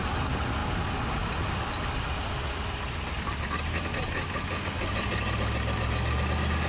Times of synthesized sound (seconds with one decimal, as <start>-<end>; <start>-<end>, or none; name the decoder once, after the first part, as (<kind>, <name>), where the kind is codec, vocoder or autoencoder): none

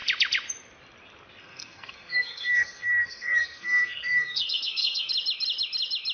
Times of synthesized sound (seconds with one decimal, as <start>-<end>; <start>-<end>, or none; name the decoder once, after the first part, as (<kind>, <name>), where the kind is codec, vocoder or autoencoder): 1.4-5.1 (codec, SNAC)